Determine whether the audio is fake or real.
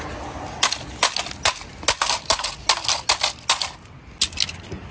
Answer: real